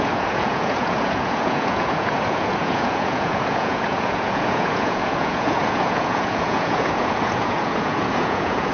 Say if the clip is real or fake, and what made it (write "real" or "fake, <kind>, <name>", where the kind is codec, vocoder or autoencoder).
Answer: fake, vocoder, Vocos